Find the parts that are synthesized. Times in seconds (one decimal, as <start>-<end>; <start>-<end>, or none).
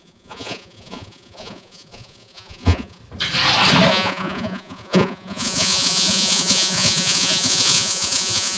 0.0-3.0; 3.9-8.6